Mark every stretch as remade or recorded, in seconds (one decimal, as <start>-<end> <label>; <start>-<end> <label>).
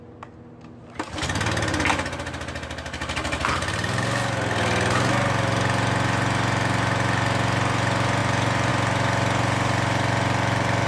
0.0-10.9 recorded